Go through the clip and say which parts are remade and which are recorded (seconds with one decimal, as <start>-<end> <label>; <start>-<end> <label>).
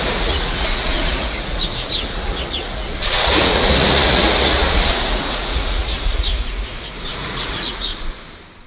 0.0-7.9 remade; 7.9-8.7 recorded